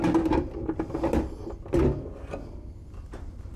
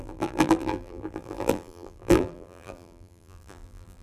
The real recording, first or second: first